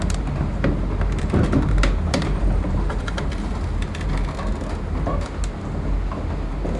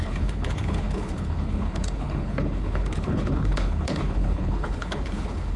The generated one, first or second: second